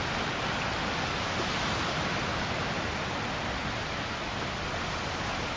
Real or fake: real